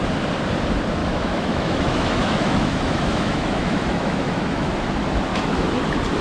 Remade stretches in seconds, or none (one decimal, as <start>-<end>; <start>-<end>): 1.0-4.7; 5.3-5.8

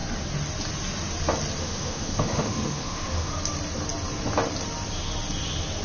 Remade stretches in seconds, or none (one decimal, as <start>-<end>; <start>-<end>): 1.6-3.3

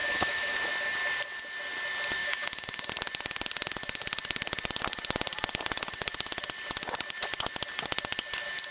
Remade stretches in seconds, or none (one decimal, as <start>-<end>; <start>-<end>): 0.0-0.7; 2.2-2.9

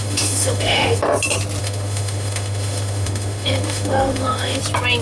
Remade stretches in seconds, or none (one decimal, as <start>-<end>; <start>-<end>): 0.0-1.0; 1.6-4.6

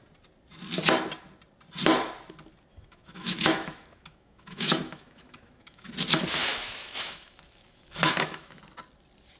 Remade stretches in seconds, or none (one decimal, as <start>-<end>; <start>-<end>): 2.7-5.9; 6.4-8.6

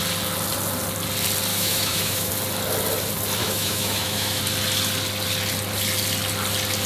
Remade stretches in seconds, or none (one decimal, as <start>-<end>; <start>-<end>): 1.5-2.3; 3.4-4.4